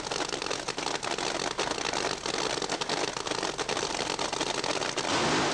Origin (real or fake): real